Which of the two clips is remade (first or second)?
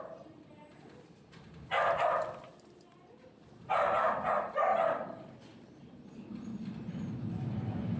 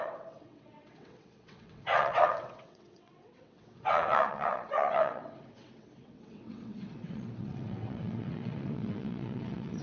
second